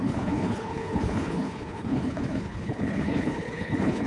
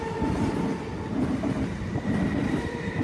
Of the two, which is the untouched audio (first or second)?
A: second